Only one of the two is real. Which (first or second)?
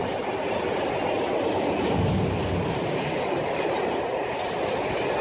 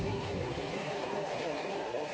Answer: first